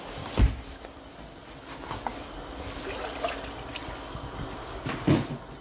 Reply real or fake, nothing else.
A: real